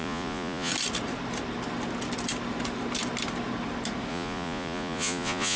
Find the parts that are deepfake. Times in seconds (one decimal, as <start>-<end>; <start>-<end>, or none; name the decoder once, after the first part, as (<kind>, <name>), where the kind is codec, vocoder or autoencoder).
0.0-0.7 (vocoder, Vocos); 4.1-5.6